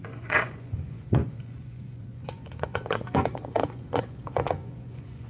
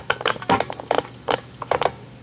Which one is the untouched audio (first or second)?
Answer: second